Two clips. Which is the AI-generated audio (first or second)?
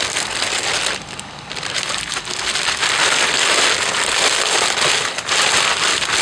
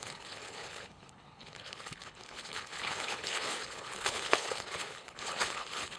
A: second